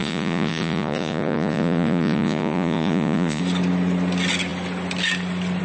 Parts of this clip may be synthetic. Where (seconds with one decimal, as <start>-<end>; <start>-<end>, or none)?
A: 0.0-3.4